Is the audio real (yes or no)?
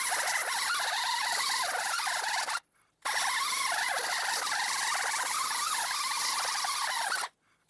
yes